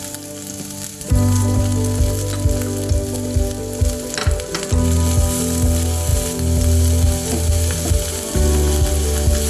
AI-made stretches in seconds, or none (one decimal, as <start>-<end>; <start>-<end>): 0.9-1.6